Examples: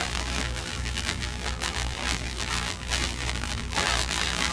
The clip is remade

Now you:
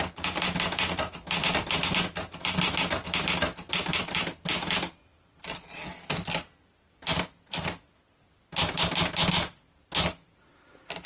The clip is recorded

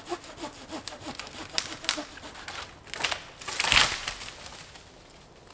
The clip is recorded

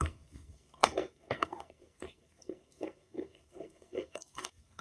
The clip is remade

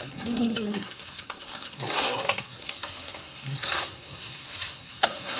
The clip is remade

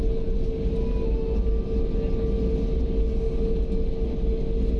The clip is recorded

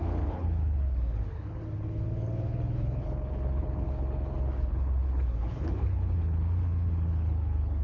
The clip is remade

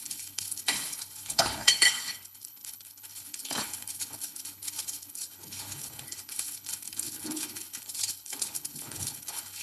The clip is remade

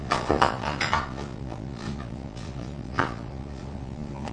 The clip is remade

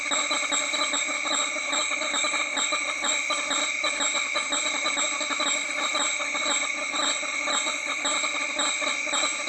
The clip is recorded